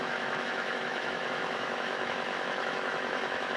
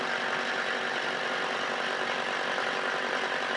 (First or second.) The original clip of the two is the second